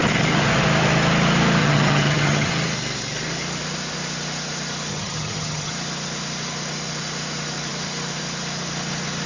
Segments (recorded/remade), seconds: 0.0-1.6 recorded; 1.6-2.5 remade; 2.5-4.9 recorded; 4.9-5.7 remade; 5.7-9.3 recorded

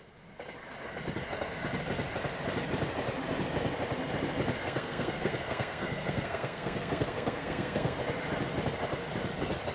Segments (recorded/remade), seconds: 0.0-4.6 recorded; 4.6-8.0 remade; 8.0-9.7 recorded

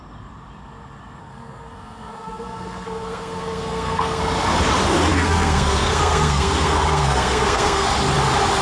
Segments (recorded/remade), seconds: 0.0-1.2 recorded; 1.2-4.2 remade; 4.2-5.1 recorded; 5.1-7.9 remade; 7.9-8.6 recorded

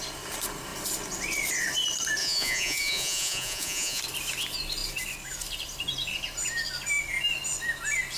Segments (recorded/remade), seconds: 0.0-2.2 recorded; 2.2-4.0 remade; 4.0-8.2 recorded

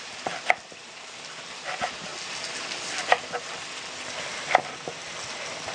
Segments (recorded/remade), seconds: 0.0-5.7 recorded

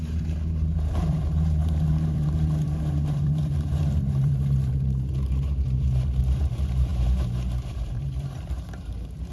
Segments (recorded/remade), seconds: 0.0-9.3 remade

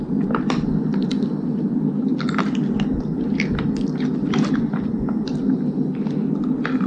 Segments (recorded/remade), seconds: 0.0-6.9 recorded

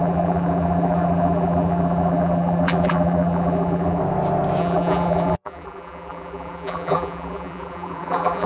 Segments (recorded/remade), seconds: 0.0-4.0 remade; 4.0-4.6 recorded; 4.6-8.5 remade